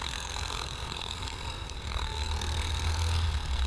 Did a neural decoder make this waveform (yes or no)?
yes